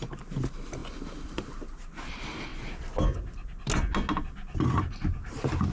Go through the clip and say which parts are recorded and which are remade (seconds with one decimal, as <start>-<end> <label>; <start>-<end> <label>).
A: 0.0-5.7 recorded